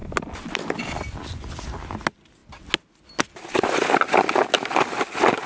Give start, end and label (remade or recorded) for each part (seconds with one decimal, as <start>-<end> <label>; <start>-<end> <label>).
0.0-5.5 recorded